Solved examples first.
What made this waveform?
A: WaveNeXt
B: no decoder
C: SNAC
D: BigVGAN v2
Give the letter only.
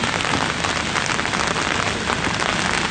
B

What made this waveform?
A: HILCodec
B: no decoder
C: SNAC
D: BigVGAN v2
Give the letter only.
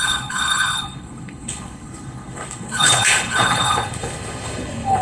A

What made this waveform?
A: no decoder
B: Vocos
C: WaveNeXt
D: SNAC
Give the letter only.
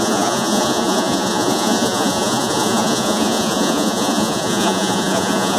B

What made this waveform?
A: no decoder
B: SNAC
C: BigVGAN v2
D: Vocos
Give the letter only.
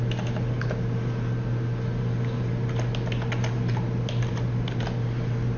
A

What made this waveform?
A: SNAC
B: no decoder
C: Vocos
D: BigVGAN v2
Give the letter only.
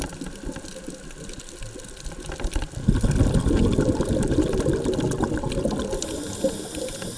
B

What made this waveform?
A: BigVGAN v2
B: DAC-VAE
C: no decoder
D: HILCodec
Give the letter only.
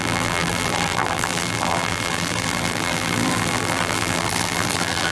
A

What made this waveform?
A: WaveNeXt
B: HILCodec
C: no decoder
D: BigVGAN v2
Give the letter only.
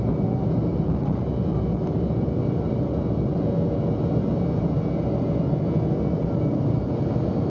C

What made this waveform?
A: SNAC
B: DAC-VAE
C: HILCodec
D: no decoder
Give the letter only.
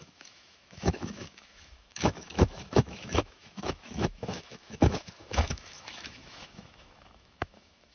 B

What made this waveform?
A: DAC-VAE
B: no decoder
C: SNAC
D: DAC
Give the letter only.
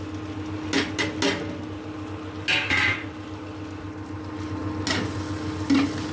B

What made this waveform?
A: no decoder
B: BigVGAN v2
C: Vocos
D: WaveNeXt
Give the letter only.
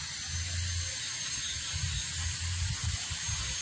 A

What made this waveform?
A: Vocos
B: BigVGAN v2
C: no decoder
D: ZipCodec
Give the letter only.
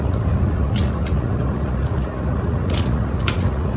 A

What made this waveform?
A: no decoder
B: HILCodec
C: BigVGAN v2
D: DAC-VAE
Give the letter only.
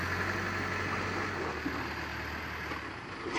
A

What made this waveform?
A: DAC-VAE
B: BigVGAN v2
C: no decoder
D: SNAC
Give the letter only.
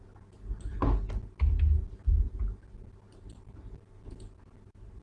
C